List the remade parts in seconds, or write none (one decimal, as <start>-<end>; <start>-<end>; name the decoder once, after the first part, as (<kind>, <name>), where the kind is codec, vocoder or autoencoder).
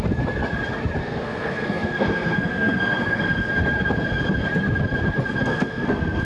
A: 1.0-3.5 (codec, SNAC); 5.5-6.2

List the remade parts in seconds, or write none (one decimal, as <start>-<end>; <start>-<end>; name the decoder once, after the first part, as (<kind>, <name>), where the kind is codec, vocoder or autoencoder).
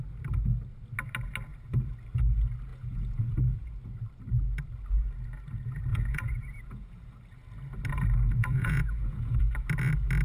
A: 2.7-3.7 (vocoder, Vocos); 5.9-7.1; 8.4-9.4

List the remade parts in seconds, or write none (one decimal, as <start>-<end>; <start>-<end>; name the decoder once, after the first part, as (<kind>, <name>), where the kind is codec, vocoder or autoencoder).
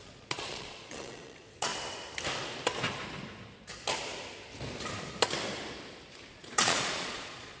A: 0.0-1.7 (vocoder, Vocos); 6.3-7.6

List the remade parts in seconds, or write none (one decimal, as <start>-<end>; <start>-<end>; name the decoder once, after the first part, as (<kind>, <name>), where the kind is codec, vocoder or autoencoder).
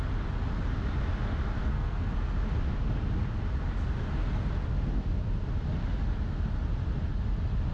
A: 1.6-2.1 (codec, SNAC)